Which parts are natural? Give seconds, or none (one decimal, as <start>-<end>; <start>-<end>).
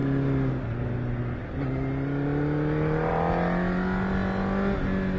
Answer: 0.0-5.2